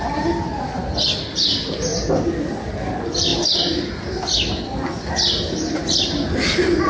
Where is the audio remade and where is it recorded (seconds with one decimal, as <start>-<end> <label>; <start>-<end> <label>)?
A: 0.0-1.9 recorded; 1.9-2.7 remade; 2.7-6.9 recorded

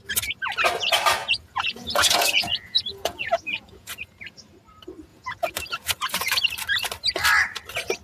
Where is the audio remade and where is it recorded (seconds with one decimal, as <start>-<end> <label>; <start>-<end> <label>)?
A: 0.0-1.2 recorded; 1.2-4.2 remade; 4.2-5.1 recorded; 5.1-6.4 remade; 6.4-8.0 recorded

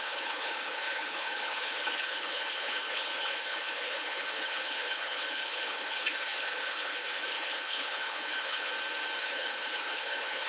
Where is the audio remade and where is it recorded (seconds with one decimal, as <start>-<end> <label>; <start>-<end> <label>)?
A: 0.0-8.7 remade; 8.7-9.2 recorded; 9.2-10.5 remade

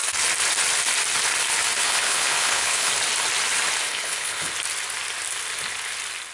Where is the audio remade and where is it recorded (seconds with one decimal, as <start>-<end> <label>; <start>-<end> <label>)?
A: 0.0-1.8 recorded; 1.8-2.9 remade; 2.9-3.8 recorded; 3.8-4.5 remade; 4.5-6.3 recorded

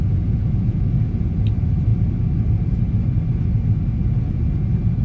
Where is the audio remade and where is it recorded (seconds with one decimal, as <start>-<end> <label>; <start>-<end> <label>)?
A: 0.0-1.0 remade; 1.0-5.0 recorded